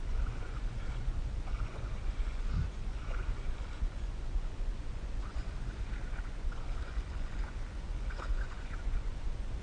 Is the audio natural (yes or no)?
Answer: no